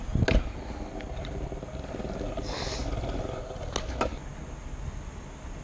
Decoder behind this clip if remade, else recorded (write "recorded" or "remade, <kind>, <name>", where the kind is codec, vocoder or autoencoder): recorded